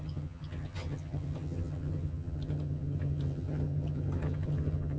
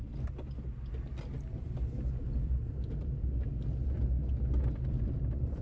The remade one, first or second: first